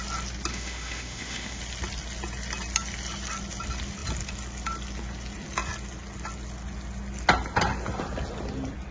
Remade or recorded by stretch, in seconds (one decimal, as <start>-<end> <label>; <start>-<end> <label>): 0.0-0.5 recorded; 0.5-1.6 remade; 1.6-8.9 recorded